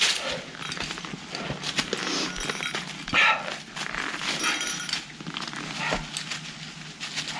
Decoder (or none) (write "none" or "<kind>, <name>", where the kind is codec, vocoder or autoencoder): none